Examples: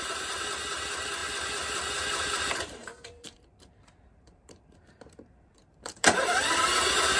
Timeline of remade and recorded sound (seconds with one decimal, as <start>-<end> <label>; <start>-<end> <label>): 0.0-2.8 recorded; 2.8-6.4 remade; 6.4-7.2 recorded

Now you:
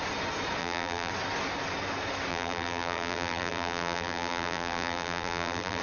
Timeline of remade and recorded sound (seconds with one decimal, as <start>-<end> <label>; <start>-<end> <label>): 0.0-0.6 recorded; 0.6-1.1 remade; 1.1-2.3 recorded; 2.3-5.8 remade

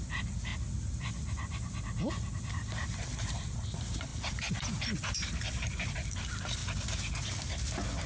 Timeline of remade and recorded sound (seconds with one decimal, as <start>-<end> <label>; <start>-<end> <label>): 0.0-0.5 remade; 0.5-2.5 recorded; 2.5-6.6 remade; 6.6-8.1 recorded

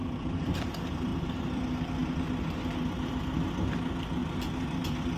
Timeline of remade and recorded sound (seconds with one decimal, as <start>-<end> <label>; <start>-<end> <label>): 0.0-0.6 remade; 0.6-1.1 recorded; 1.1-1.6 remade; 1.6-4.2 recorded; 4.2-5.2 remade

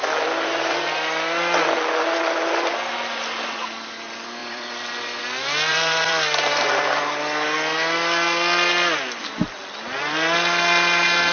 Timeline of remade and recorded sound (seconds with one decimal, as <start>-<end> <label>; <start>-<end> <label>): 0.0-4.4 recorded; 4.4-5.2 remade; 5.2-5.7 recorded; 5.7-7.0 remade; 7.0-11.3 recorded